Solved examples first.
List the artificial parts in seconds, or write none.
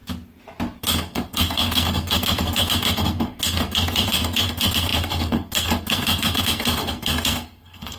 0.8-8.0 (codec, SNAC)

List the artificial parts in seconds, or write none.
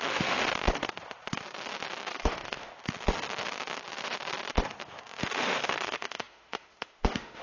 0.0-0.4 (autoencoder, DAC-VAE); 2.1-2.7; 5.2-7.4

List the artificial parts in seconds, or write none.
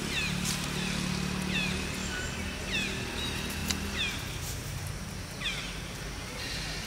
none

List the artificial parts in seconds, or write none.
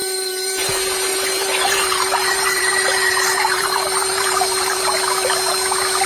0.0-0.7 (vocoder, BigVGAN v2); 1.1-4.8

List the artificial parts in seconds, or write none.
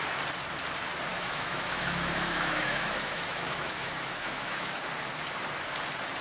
1.1-4.8 (autoencoder, DAC-VAE)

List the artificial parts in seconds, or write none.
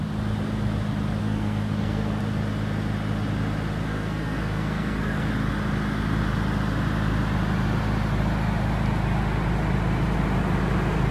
1.2-2.2 (codec, SNAC); 3.9-5.3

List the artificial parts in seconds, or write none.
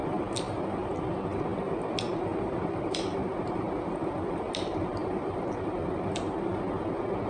2.3-6.6 (vocoder, BigVGAN v2)